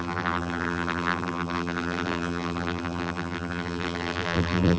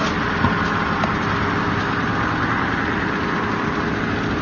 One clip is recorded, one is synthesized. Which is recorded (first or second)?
second